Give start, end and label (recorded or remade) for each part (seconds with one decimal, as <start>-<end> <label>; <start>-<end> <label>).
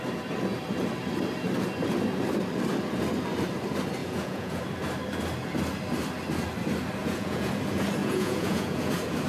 0.0-4.0 recorded; 4.0-4.6 remade; 4.6-7.0 recorded; 7.0-7.5 remade; 7.5-8.0 recorded; 8.0-8.9 remade; 8.9-9.3 recorded